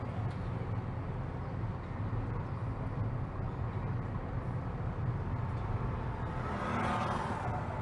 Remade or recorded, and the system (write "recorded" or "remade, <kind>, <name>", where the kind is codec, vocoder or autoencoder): recorded